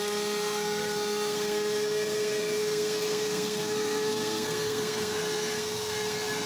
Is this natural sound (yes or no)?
no